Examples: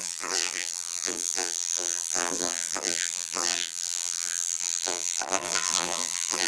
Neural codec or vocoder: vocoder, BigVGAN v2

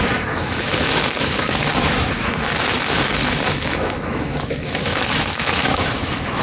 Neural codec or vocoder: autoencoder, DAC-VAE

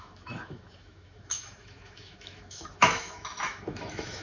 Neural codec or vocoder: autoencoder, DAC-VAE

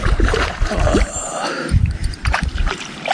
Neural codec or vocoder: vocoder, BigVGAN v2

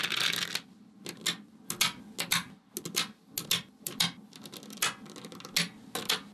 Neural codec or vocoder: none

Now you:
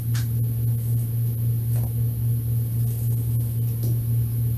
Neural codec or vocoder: none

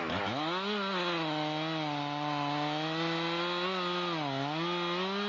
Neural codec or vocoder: none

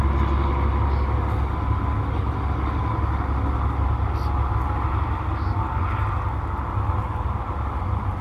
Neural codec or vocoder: none